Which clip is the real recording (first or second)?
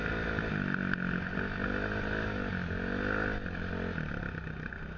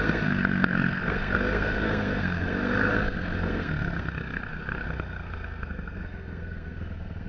first